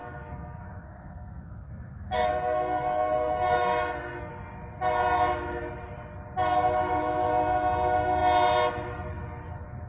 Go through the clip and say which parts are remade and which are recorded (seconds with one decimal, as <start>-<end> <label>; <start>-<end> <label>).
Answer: 0.0-4.3 remade; 4.3-9.9 recorded